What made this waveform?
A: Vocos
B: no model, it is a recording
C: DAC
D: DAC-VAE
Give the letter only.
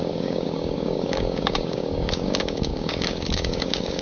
C